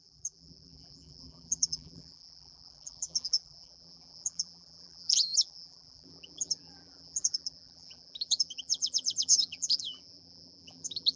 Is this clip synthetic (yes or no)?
yes